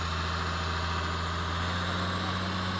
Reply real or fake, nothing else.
real